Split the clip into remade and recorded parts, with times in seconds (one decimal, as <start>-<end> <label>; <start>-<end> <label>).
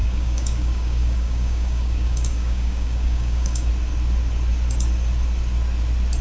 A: 0.0-3.7 remade; 3.7-6.2 recorded